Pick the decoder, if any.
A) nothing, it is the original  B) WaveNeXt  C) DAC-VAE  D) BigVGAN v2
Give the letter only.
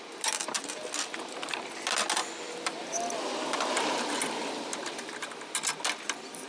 A